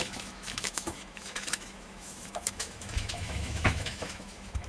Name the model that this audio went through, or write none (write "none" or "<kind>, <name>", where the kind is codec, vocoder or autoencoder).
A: autoencoder, DAC-VAE